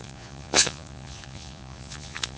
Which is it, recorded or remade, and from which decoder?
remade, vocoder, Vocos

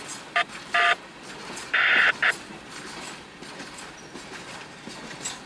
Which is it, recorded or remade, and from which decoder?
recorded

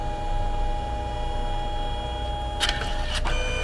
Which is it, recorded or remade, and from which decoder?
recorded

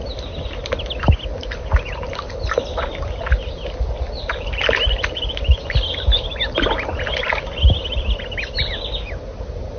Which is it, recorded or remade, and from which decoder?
recorded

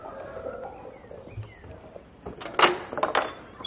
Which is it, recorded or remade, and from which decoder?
recorded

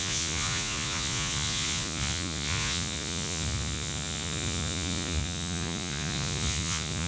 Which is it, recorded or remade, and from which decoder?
remade, vocoder, Vocos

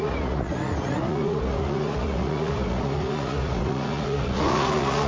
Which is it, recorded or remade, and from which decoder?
remade, vocoder, Vocos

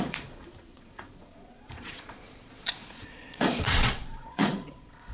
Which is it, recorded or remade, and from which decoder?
remade, vocoder, Vocos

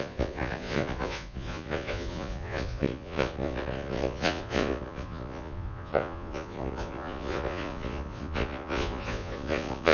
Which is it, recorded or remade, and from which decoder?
remade, vocoder, Vocos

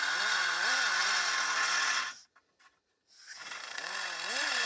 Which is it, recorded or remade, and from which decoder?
remade, vocoder, Vocos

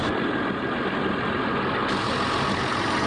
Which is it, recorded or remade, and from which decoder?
recorded